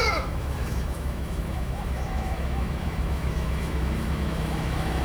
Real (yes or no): no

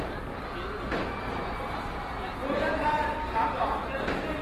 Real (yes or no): yes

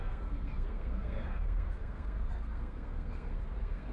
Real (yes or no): no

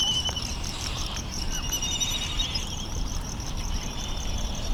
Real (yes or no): no